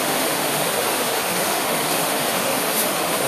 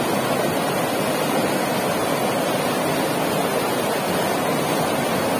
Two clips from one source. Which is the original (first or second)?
second